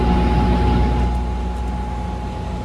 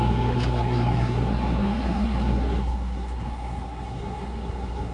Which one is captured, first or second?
first